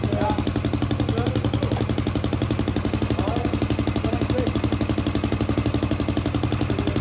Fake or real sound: real